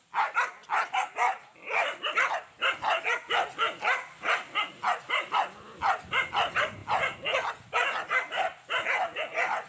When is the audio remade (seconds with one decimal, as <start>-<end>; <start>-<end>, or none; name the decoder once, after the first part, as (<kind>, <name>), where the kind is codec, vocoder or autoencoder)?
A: 0.0-6.8 (vocoder, BigVGAN v2); 7.5-9.7